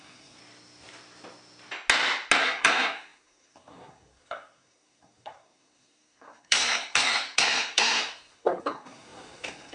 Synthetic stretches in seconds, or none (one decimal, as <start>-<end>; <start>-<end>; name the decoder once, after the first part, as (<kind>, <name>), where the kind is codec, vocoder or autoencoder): 0.0-0.4 (codec, SNAC); 2.4-9.7